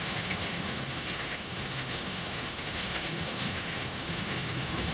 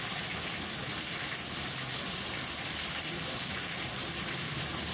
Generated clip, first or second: first